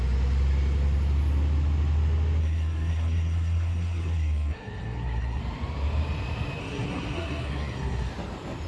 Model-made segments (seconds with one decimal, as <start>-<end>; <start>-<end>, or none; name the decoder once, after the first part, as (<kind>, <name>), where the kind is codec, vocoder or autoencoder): 2.4-5.4 (codec, SNAC); 6.6-8.1